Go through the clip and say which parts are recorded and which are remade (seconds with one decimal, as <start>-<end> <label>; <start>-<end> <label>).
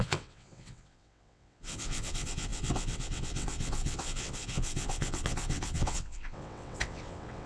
0.0-7.5 remade